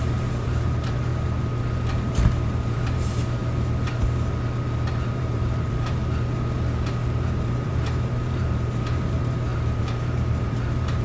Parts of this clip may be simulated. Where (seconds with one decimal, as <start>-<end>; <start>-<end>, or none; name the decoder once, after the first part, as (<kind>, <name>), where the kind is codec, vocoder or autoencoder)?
0.0-1.1 (vocoder, BigVGAN v2); 2.1-3.4; 5.2-6.0; 6.5-11.0